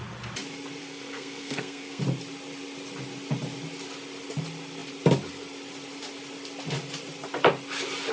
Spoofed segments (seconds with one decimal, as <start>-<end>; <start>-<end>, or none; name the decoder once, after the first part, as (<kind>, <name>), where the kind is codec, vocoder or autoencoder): 0.8-2.0 (codec, SNAC)